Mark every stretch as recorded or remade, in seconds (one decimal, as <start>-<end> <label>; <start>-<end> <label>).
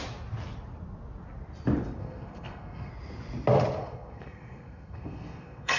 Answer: 0.0-2.0 recorded; 2.0-2.9 remade; 2.9-3.8 recorded; 3.8-5.8 remade